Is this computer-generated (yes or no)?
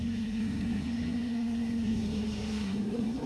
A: yes